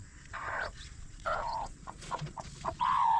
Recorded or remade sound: remade